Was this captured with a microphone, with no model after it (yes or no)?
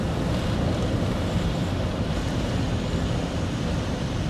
no